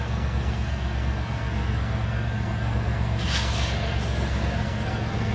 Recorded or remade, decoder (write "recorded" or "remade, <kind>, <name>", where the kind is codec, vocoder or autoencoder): remade, codec, SNAC